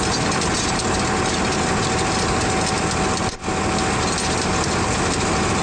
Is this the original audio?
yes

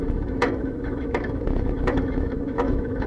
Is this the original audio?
no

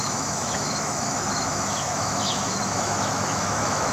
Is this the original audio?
no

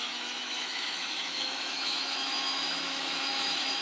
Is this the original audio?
no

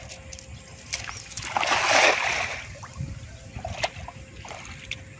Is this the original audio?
yes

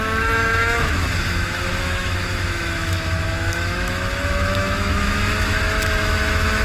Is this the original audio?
no